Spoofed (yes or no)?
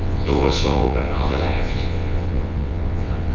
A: yes